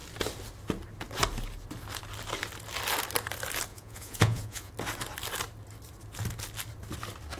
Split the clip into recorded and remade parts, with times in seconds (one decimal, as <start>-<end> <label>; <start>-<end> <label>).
0.0-3.7 recorded; 3.7-4.7 remade; 4.7-7.4 recorded